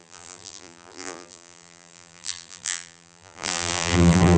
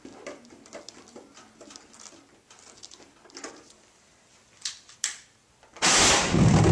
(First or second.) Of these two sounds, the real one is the second